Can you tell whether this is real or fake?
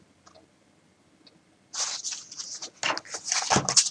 real